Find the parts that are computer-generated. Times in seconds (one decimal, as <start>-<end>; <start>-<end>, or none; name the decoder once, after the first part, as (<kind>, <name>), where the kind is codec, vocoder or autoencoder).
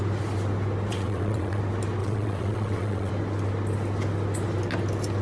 0.9-1.6 (vocoder, WaveNeXt); 2.0-3.1